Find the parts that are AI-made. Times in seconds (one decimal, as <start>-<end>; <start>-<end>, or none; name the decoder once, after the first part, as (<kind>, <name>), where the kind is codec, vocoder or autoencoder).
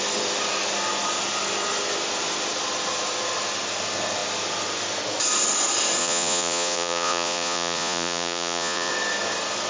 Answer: 6.0-8.9 (vocoder, Vocos)